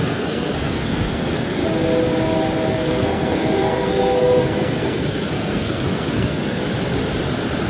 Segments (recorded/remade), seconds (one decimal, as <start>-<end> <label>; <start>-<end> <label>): 0.0-1.6 remade; 1.6-2.7 recorded; 2.7-6.6 remade; 6.6-7.7 recorded